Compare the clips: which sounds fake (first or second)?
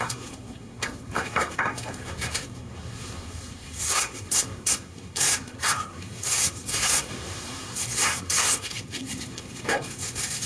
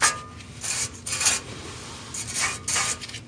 first